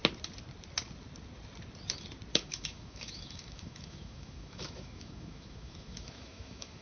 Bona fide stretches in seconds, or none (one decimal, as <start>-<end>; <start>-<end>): 0.0-2.3